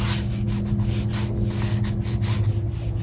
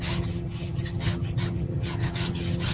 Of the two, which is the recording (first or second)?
first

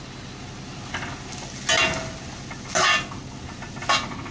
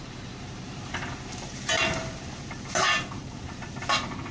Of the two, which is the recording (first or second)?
first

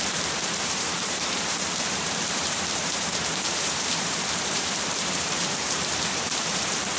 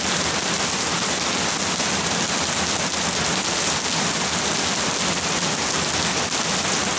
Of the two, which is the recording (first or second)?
second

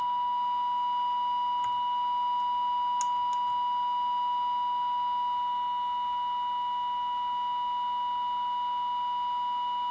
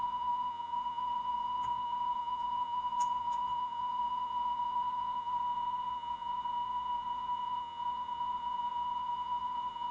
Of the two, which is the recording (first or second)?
first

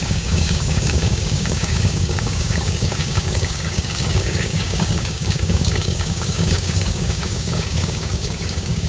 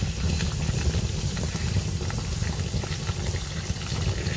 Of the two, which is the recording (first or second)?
second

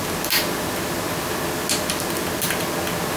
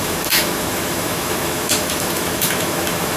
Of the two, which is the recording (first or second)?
first